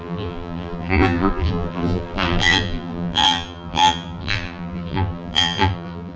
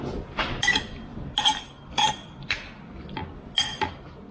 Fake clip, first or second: first